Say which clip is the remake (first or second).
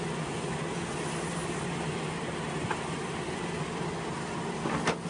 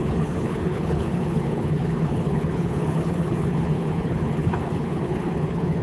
second